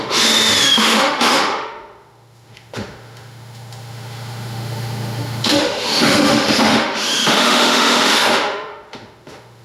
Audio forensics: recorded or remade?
remade